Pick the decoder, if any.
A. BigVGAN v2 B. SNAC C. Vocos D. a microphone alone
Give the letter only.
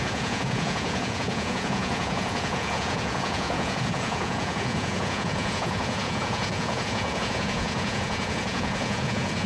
C